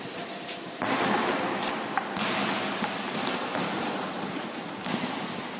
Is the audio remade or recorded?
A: recorded